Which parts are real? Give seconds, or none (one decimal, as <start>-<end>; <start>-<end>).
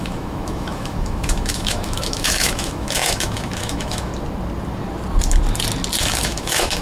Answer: 4.1-6.0